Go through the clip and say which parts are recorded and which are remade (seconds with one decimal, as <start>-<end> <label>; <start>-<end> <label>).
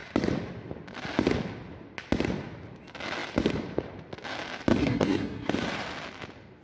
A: 0.0-4.8 recorded; 4.8-5.5 remade; 5.5-6.6 recorded